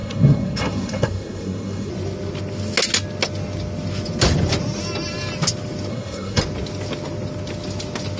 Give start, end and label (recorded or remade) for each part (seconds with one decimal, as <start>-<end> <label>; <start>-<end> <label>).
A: 0.0-1.9 remade; 1.9-5.9 recorded; 5.9-6.4 remade; 6.4-8.2 recorded